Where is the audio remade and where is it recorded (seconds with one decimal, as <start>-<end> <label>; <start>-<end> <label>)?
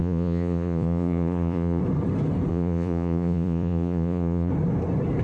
0.0-1.8 remade; 1.8-2.5 recorded; 2.5-4.5 remade; 4.5-5.2 recorded